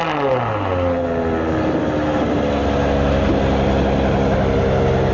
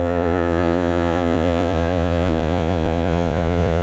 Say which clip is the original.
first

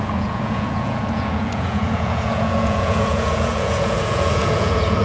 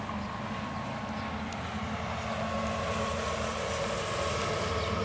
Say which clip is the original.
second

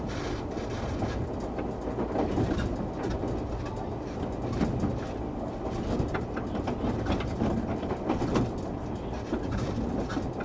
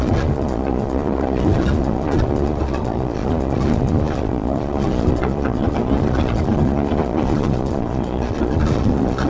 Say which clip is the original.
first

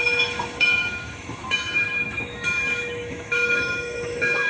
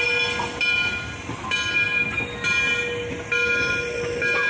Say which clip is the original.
second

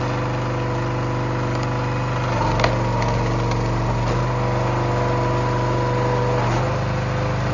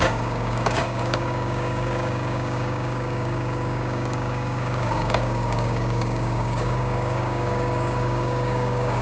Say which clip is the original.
first